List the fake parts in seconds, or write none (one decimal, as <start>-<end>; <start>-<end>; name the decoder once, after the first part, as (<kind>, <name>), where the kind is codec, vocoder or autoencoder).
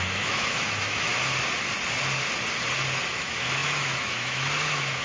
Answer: 0.0-1.1 (autoencoder, DAC-VAE); 3.1-5.0